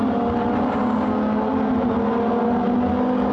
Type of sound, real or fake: real